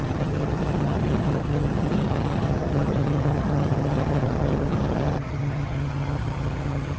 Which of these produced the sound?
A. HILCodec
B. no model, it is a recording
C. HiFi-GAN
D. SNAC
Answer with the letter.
C